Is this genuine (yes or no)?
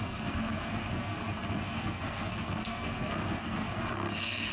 no